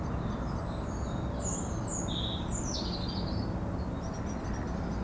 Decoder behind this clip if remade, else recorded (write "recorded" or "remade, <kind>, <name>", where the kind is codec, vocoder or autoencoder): recorded